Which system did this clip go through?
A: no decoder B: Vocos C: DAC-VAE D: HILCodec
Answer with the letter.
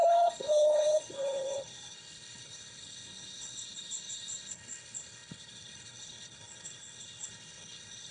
D